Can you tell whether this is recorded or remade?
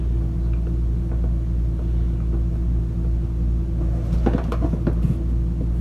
recorded